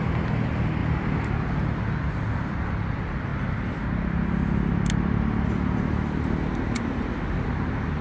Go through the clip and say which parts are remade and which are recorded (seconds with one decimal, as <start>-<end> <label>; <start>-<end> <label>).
0.0-8.0 recorded